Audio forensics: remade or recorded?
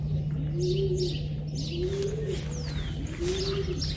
recorded